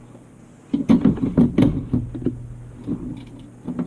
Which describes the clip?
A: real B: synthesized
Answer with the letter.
A